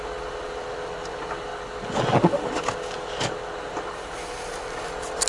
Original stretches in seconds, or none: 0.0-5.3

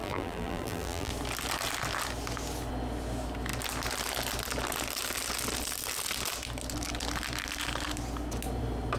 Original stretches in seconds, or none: 1.1-9.0

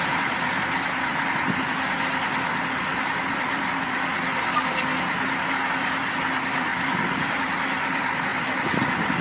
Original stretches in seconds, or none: 1.1-5.9

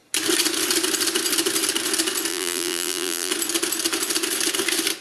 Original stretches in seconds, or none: 0.0-2.3; 3.3-5.0

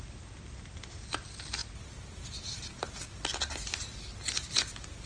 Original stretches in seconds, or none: 0.0-5.1